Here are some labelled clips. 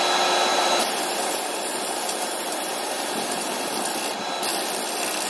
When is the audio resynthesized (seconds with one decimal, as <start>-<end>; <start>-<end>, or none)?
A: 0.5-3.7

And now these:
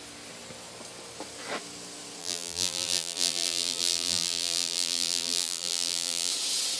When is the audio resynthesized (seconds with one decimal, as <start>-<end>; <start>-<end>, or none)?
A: 2.2-6.3

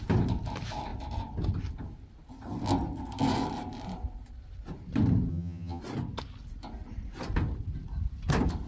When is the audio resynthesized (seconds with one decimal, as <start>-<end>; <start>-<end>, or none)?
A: 5.3-5.8

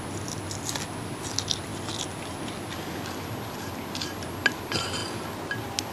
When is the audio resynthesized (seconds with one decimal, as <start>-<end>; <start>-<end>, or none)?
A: none

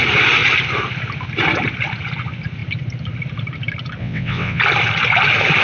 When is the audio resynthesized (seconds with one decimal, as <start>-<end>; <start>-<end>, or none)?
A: 4.0-4.6